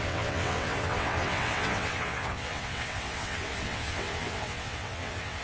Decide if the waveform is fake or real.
fake